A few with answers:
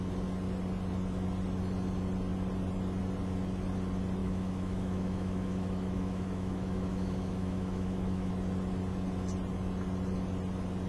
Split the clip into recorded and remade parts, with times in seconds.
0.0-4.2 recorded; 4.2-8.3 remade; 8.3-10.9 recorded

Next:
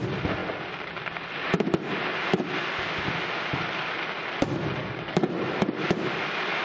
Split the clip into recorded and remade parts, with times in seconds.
0.0-4.8 recorded; 4.8-5.3 remade; 5.3-6.6 recorded

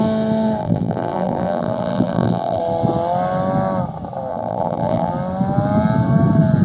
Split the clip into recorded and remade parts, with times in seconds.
0.0-0.6 recorded; 0.6-2.6 remade; 2.6-4.3 recorded; 4.3-5.1 remade; 5.1-6.6 recorded

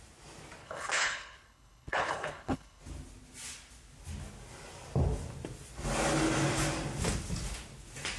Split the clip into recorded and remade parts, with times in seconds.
0.0-0.6 recorded; 0.6-2.8 remade; 2.8-8.2 recorded

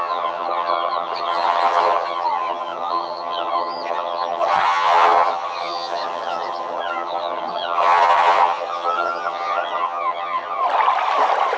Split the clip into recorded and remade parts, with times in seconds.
0.0-10.6 remade; 10.6-11.6 recorded

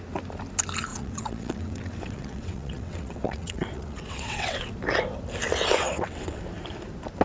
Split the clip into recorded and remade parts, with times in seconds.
0.0-0.9 recorded; 0.9-4.7 remade; 4.7-5.8 recorded; 5.8-6.4 remade; 6.4-7.2 recorded